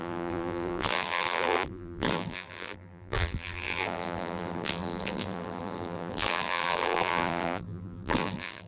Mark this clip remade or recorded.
remade